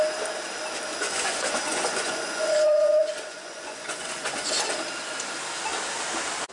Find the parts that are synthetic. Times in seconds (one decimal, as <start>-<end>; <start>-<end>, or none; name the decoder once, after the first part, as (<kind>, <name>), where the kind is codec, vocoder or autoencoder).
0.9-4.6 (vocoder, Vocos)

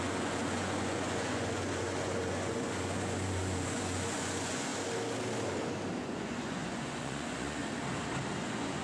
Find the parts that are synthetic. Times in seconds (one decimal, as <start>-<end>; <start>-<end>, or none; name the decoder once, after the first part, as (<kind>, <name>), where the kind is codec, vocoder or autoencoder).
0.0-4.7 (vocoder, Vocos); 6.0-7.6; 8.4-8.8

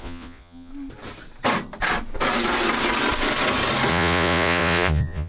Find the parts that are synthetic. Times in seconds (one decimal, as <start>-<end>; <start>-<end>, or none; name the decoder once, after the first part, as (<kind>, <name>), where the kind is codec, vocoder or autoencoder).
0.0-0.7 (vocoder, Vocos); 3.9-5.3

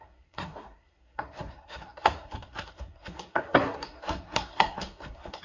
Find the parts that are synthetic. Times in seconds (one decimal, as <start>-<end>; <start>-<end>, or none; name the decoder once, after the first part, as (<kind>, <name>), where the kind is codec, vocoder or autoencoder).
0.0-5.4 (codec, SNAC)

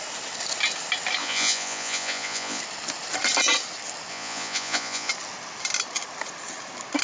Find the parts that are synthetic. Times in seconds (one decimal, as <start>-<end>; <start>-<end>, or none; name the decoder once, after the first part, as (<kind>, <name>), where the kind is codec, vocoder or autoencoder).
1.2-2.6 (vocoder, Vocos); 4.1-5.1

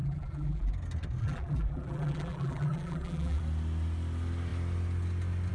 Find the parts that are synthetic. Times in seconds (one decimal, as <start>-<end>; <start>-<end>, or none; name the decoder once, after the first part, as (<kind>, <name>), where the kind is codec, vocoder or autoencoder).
0.0-0.7 (vocoder, BigVGAN v2); 1.2-3.4

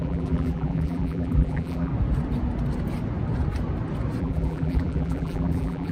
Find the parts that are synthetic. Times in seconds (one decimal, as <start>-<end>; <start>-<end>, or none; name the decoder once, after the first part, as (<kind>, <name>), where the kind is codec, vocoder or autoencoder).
0.0-1.9 (vocoder, BigVGAN v2); 4.2-5.9